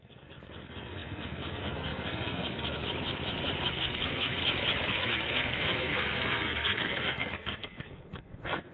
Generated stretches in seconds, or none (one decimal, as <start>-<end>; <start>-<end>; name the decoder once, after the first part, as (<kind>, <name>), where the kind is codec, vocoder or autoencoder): 0.0-2.8 (codec, SNAC); 3.7-4.4; 4.9-8.7